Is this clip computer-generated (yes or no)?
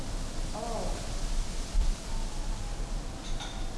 no